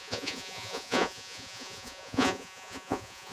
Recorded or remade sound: remade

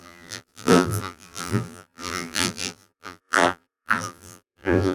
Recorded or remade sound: remade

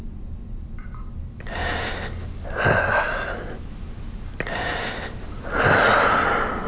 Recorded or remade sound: recorded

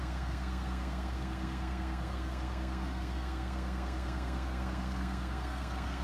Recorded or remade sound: remade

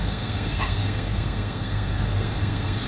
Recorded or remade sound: remade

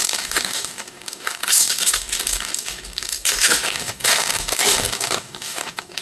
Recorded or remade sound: remade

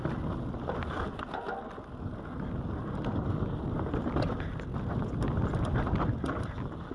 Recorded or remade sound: recorded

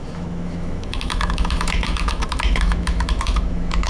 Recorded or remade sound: remade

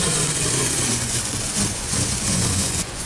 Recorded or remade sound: remade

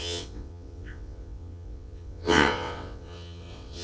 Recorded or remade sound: remade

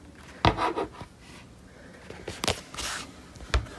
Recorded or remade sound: recorded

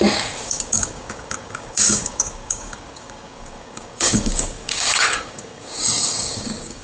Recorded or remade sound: remade